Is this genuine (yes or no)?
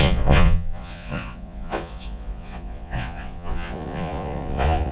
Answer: no